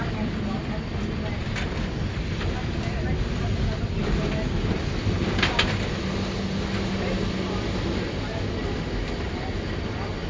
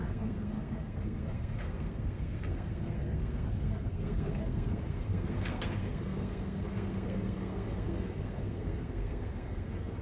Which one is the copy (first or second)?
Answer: second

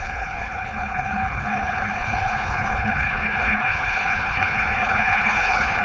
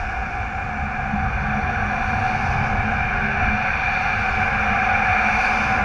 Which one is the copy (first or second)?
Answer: first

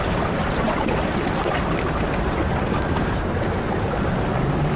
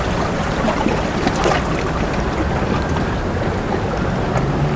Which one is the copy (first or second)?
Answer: first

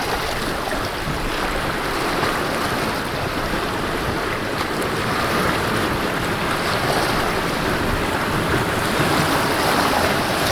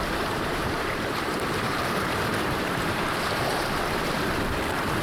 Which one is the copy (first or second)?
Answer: second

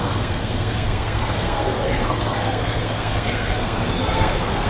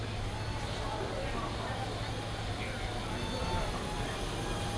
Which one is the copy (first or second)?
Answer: first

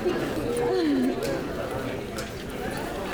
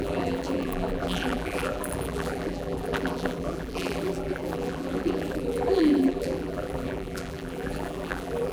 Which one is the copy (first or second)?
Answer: second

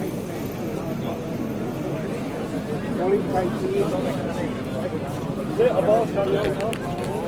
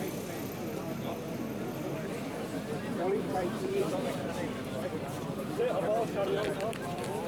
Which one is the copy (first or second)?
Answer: second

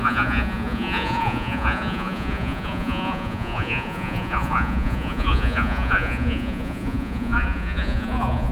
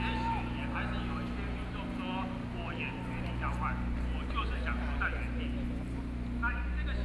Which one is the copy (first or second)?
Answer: first